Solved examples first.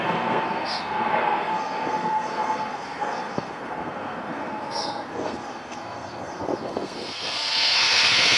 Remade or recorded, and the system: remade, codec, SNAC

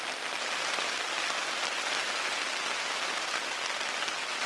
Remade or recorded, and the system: recorded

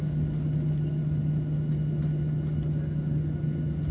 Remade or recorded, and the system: recorded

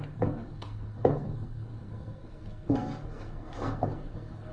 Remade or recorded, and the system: remade, codec, SNAC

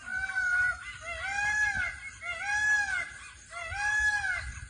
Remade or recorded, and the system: recorded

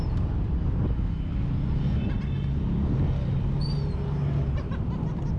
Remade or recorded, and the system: recorded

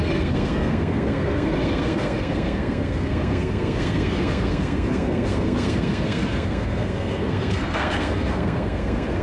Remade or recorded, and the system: remade, codec, SNAC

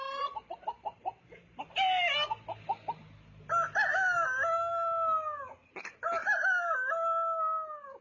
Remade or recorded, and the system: recorded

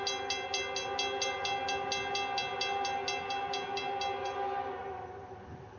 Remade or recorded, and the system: recorded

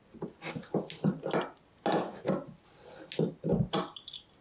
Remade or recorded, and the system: recorded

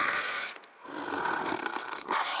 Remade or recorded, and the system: remade, codec, SNAC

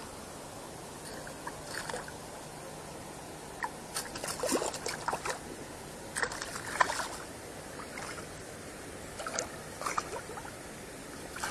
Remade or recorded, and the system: recorded